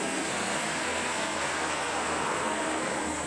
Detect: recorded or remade remade